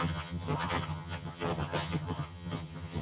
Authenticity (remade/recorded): remade